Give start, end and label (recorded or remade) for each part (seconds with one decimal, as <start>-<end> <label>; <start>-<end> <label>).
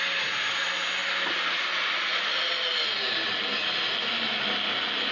0.0-5.1 recorded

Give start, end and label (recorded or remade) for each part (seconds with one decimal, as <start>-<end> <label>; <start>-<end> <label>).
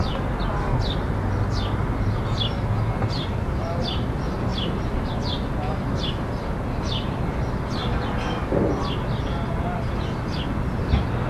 0.0-4.5 recorded; 4.5-5.1 remade; 5.1-11.3 recorded